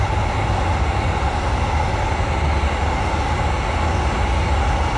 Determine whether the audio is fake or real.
real